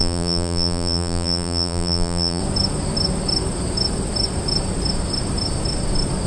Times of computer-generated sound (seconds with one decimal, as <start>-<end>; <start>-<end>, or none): 0.0-2.4